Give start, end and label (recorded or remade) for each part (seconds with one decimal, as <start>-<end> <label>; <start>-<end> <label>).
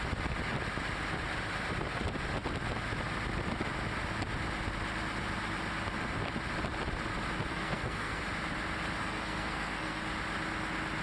0.0-7.5 recorded; 7.5-8.2 remade; 8.2-9.0 recorded; 9.0-10.0 remade; 10.0-11.0 recorded